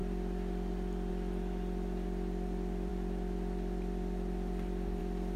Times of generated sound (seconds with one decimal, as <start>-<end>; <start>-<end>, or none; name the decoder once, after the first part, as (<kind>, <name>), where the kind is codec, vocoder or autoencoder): none